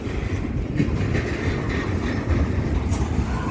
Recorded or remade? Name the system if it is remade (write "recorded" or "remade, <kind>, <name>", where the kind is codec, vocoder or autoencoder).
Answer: recorded